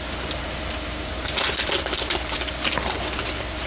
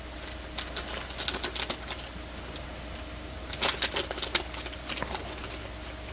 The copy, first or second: first